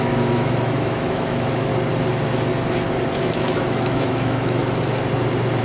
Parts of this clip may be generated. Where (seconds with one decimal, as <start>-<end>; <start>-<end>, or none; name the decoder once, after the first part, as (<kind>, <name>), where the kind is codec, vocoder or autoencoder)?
0.0-1.7 (autoencoder, DAC-VAE); 3.2-4.6